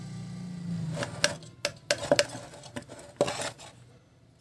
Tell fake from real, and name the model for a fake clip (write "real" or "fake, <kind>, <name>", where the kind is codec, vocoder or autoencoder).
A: real